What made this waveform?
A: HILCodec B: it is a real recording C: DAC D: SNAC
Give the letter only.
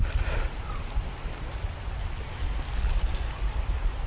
B